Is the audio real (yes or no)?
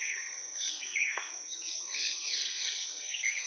no